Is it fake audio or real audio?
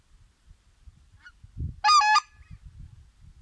real